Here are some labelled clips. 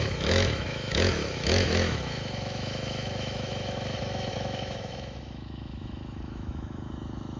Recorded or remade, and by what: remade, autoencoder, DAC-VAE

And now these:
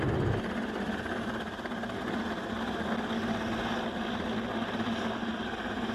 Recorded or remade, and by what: recorded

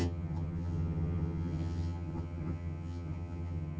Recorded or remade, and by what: remade, vocoder, HiFi-GAN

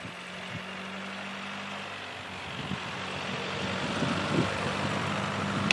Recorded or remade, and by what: recorded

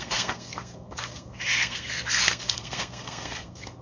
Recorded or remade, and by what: remade, codec, SNAC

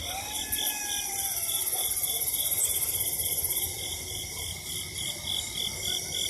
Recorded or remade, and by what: remade, vocoder, BigVGAN v2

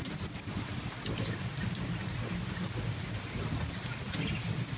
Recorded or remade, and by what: recorded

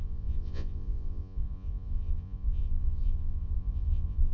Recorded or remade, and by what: remade, vocoder, Vocos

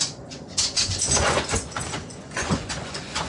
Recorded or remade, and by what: remade, vocoder, Vocos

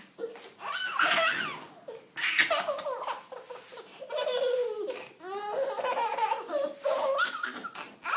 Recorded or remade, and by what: recorded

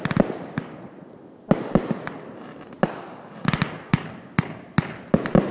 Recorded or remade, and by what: recorded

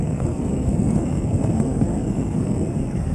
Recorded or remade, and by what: remade, codec, SNAC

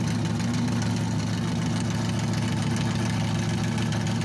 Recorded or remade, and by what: recorded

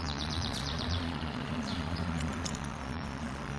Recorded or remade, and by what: remade, vocoder, Vocos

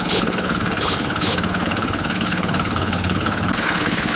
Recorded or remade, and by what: remade, codec, HILCodec